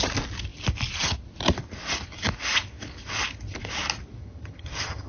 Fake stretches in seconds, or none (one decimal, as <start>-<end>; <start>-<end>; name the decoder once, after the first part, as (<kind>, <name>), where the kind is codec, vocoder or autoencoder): 4.2-5.1 (vocoder, HiFi-GAN)